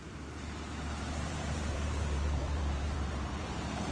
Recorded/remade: remade